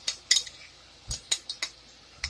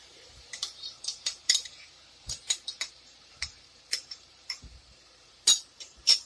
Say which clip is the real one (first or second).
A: first